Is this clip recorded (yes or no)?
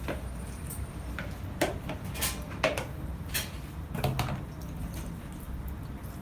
yes